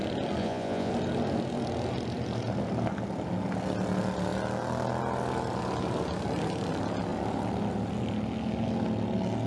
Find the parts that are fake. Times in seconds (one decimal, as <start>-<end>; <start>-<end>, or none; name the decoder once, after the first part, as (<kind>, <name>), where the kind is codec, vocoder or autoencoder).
0.4-0.9 (vocoder, Vocos)